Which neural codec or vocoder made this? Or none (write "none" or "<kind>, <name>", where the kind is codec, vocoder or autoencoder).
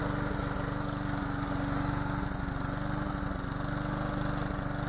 none